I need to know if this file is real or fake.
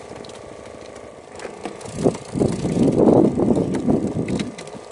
real